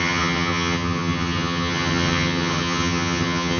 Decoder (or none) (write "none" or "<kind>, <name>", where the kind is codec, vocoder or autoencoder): vocoder, HiFi-GAN